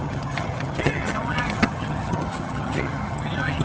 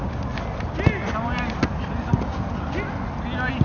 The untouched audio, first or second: second